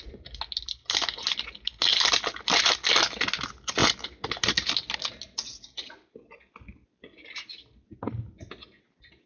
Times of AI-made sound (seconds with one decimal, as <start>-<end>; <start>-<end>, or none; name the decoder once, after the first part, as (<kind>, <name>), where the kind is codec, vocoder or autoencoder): none